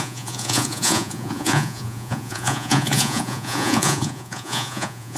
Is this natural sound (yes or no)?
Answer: no